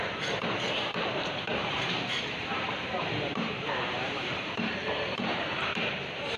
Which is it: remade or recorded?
remade